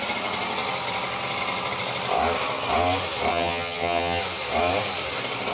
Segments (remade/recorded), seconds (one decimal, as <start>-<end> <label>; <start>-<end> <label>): 0.0-3.3 recorded; 3.3-4.2 remade; 4.2-5.5 recorded